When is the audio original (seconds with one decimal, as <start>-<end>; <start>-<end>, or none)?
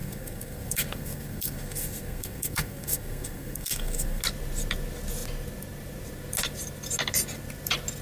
4.2-8.0